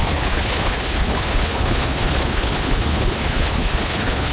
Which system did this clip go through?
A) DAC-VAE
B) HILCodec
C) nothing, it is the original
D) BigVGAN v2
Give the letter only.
B